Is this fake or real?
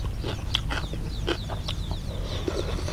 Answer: real